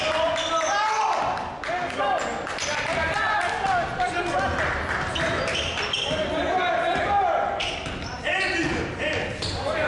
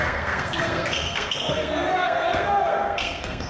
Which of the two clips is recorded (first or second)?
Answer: first